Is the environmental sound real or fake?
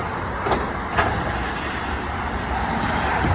real